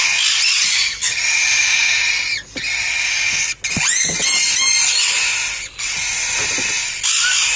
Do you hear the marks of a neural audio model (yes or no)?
no